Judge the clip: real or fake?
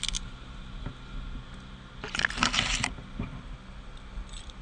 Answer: real